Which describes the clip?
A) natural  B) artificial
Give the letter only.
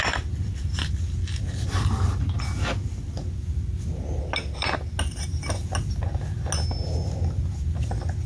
A